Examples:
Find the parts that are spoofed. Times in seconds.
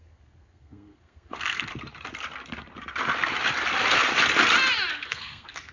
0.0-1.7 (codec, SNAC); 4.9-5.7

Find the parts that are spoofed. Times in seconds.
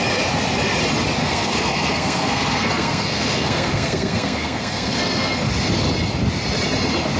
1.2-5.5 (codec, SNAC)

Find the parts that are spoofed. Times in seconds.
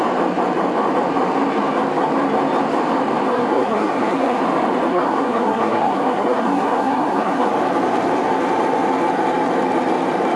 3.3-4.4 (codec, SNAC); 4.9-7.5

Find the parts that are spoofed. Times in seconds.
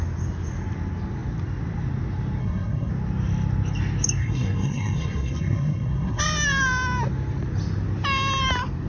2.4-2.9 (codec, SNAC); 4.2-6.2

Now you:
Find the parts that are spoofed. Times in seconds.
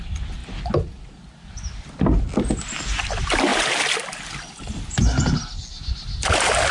none